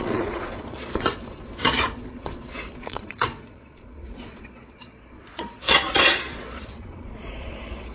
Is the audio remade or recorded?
remade